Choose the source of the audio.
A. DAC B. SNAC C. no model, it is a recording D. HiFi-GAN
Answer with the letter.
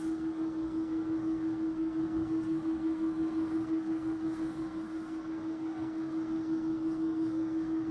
B